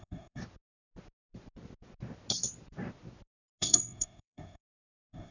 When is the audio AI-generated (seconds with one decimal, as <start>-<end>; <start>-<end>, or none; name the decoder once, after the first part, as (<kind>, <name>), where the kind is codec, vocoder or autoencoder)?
0.0-0.4 (codec, SNAC); 3.6-5.3